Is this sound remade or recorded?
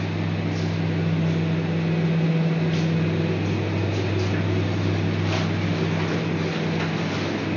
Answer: recorded